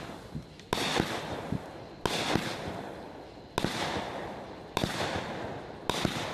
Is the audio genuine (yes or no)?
yes